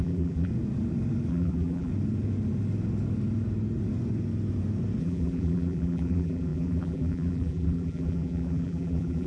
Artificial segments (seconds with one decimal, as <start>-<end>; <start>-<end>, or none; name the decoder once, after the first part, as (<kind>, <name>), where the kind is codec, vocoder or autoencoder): 0.0-0.5 (vocoder, BigVGAN v2); 1.3-1.9; 5.0-9.3